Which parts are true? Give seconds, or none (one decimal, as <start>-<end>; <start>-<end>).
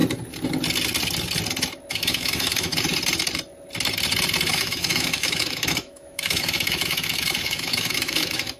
0.0-1.9; 2.7-4.5